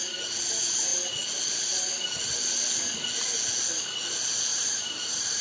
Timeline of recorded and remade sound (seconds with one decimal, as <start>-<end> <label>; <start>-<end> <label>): 0.0-4.5 recorded; 4.5-5.4 remade